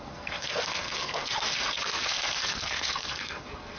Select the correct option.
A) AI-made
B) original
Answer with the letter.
A